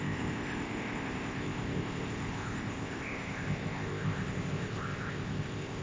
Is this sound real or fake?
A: fake